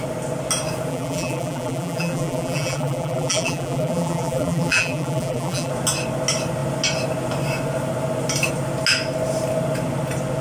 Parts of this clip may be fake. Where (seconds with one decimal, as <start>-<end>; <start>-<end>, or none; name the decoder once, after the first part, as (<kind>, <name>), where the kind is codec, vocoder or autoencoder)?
0.9-5.7 (vocoder, BigVGAN v2)